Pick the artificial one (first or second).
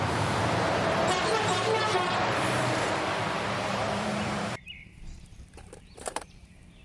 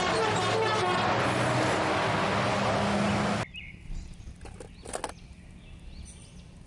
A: first